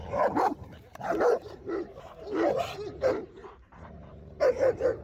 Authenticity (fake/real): fake